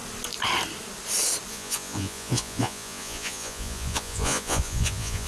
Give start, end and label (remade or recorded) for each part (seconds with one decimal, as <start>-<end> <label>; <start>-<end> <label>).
0.0-1.5 recorded; 1.5-5.3 remade